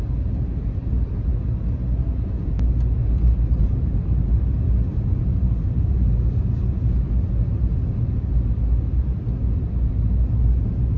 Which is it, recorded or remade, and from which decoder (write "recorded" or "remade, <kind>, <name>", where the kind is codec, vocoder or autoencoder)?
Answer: recorded